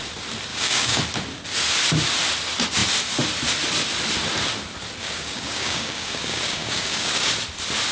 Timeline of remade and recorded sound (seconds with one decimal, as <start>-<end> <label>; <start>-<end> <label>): 0.0-0.5 recorded; 0.5-1.0 remade; 1.0-5.0 recorded; 5.0-7.3 remade; 7.3-7.9 recorded